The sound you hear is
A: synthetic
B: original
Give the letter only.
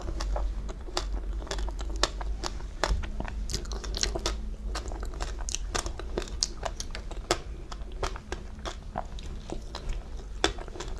B